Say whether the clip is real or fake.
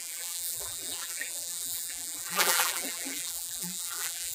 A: fake